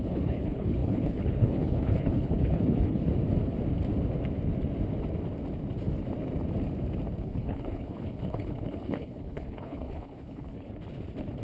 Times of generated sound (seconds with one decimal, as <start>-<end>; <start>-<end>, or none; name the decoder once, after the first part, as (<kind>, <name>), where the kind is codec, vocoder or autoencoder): 0.0-3.1 (codec, HILCodec); 7.2-10.7